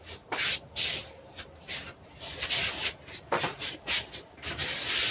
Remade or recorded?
remade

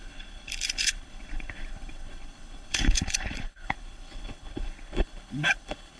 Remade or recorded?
remade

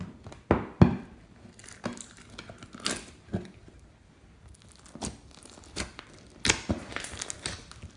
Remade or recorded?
recorded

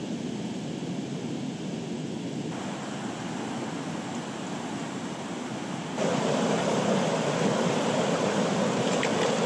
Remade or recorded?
recorded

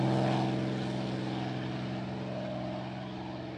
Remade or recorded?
recorded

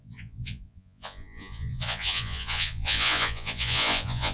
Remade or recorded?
remade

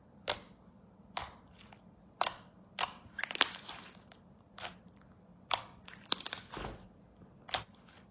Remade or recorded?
recorded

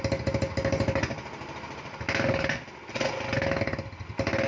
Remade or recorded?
recorded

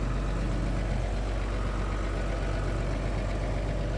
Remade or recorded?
recorded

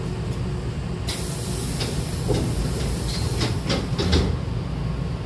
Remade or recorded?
recorded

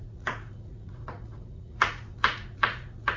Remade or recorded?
remade